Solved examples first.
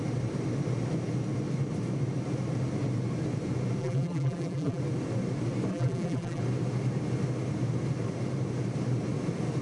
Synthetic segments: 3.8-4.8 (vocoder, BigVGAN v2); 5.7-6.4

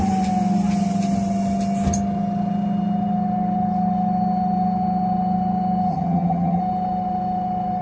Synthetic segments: 5.9-6.6 (vocoder, HiFi-GAN)

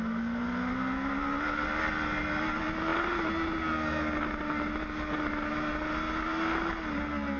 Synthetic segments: none

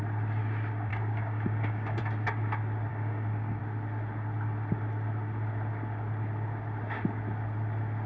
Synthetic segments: 0.9-2.0 (codec, DAC); 2.9-3.6

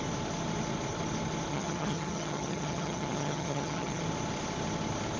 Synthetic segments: 1.5-4.0 (vocoder, HiFi-GAN)

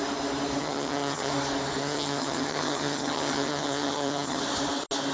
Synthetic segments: 0.6-1.3 (vocoder, HiFi-GAN); 1.8-4.4

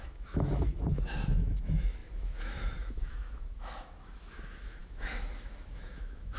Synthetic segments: 0.0-6.4 (autoencoder, DAC-VAE)